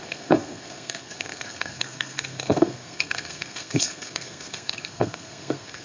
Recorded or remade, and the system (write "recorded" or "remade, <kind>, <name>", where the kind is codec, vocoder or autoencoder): remade, codec, SNAC